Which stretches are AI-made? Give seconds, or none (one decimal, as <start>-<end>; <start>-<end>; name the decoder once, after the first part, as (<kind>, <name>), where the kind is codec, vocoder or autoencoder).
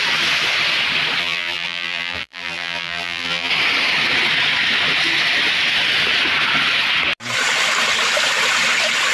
1.2-3.5 (vocoder, BigVGAN v2)